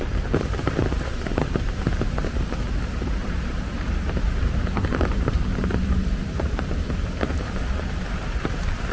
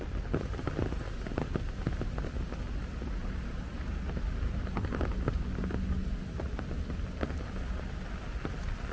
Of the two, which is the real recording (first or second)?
second